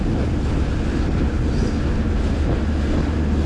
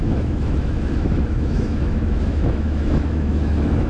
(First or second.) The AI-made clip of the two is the second